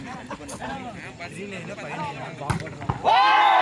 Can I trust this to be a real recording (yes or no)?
yes